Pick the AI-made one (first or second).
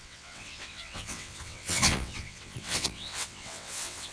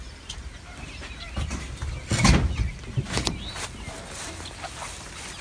first